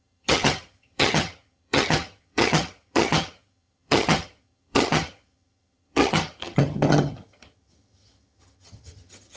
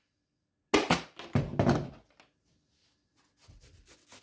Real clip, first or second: second